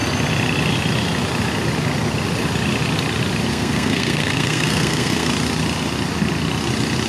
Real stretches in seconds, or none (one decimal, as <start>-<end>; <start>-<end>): 0.0-3.5; 5.3-7.1